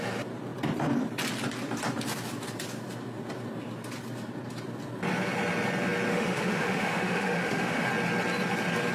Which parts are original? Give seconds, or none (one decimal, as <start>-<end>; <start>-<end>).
0.0-6.1; 7.9-8.9

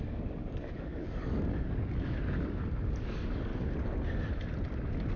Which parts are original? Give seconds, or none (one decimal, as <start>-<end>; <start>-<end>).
3.5-5.2